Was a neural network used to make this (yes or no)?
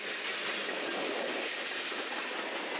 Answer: no